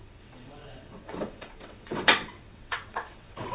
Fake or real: fake